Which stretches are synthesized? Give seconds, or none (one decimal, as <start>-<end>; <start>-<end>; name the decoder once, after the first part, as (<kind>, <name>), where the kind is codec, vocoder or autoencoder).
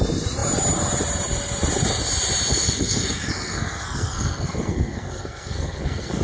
2.5-6.2 (codec, SNAC)